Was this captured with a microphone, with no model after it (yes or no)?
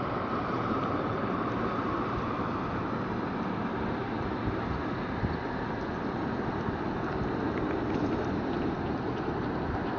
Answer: no